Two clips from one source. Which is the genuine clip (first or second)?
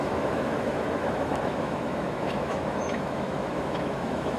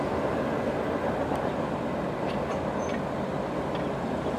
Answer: second